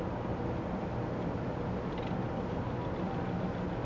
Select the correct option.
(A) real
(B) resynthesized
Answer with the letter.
A